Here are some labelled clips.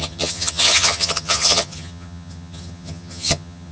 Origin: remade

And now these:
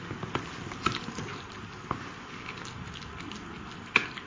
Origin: recorded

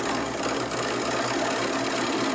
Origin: recorded